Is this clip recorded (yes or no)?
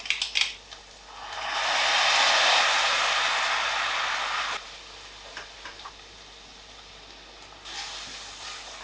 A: yes